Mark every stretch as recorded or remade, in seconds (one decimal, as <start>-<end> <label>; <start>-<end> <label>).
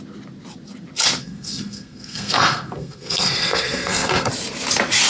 0.0-1.2 recorded; 1.2-4.3 remade; 4.3-5.1 recorded